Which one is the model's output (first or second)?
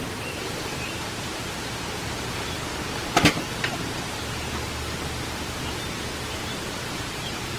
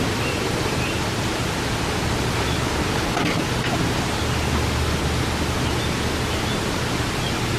first